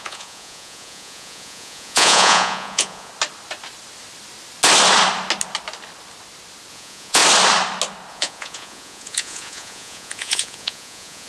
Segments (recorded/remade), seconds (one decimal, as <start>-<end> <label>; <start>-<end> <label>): 0.0-3.1 remade; 3.1-6.7 recorded; 6.7-7.2 remade; 7.2-8.1 recorded; 8.1-11.3 remade